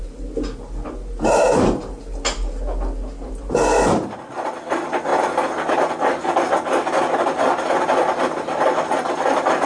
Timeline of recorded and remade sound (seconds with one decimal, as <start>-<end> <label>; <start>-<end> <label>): 0.0-9.7 recorded

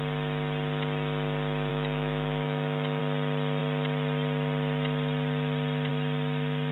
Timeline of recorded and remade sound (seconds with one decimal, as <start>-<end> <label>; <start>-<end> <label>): 0.0-1.7 recorded; 1.7-3.0 remade; 3.0-6.7 recorded

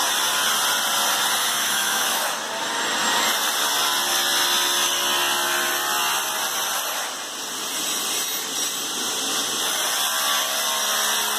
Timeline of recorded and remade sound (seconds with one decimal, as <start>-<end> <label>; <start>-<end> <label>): 0.0-1.4 recorded; 1.4-2.4 remade; 2.4-11.4 recorded

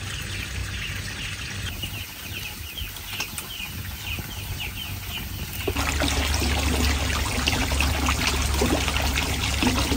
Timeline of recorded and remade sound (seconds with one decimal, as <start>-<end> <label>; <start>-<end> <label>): 0.0-10.0 recorded

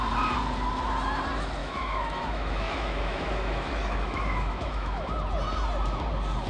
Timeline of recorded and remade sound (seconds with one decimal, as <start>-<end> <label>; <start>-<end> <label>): 0.0-1.6 recorded; 1.6-5.1 remade; 5.1-6.5 recorded

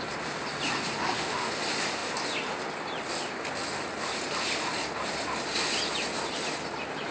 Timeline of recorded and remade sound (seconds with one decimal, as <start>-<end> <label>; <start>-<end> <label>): 0.0-1.0 recorded; 1.0-1.5 remade; 1.5-7.1 recorded

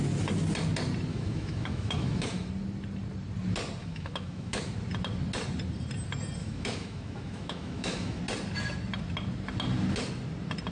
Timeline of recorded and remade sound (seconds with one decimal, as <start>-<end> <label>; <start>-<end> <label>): 0.0-1.1 recorded; 1.1-2.5 remade; 2.5-3.8 recorded; 3.8-4.7 remade; 4.7-6.4 recorded; 6.4-8.2 remade; 8.2-10.7 recorded